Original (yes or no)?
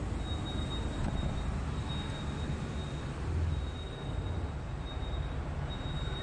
yes